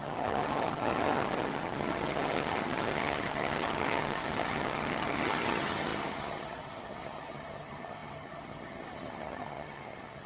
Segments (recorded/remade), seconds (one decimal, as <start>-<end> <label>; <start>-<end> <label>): 0.0-10.3 remade